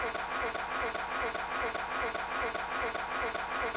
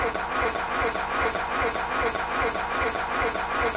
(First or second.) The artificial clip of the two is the second